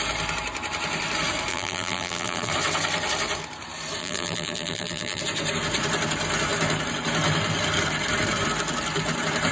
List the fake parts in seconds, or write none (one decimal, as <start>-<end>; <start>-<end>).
1.5-2.5; 4.0-5.2